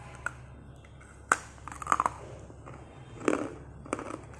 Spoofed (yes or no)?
no